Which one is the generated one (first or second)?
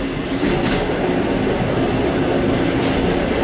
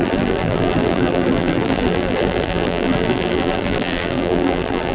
second